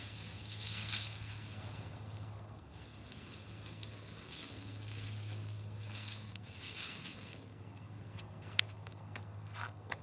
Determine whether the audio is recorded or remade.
remade